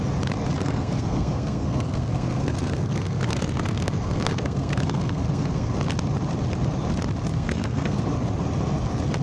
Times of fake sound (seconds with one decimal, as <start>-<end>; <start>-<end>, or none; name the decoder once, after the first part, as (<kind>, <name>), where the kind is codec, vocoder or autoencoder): 0.6-5.7 (codec, SNAC); 7.3-8.0